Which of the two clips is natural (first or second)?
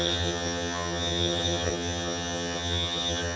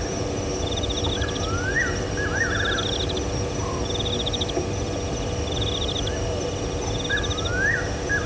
second